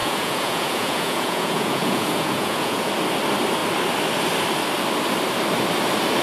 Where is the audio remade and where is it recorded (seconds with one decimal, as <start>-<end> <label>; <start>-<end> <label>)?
0.0-2.9 remade; 2.9-6.2 recorded